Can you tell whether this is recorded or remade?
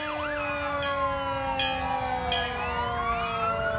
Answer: recorded